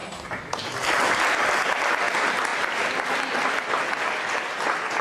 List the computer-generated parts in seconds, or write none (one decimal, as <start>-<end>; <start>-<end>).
none